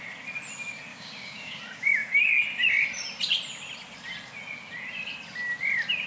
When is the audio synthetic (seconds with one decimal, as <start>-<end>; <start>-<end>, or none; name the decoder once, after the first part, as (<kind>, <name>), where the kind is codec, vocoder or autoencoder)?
0.9-1.6 (codec, DAC)